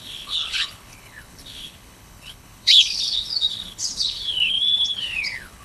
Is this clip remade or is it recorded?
remade